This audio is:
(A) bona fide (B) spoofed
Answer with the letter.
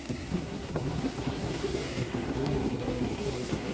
B